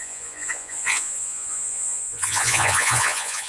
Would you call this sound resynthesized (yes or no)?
yes